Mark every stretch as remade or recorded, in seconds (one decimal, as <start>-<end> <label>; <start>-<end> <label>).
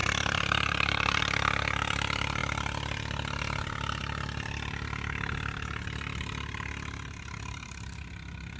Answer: 0.0-1.2 remade; 1.2-8.6 recorded